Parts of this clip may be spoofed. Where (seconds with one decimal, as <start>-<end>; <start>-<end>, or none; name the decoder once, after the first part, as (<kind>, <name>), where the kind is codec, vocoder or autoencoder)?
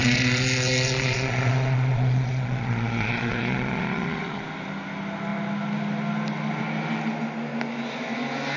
0.0-4.4 (vocoder, Vocos)